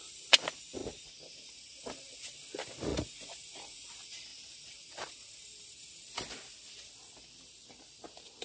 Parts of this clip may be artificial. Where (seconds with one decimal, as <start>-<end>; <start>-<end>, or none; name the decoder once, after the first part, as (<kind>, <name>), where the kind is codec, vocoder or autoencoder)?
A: 2.9-3.9 (vocoder, Vocos)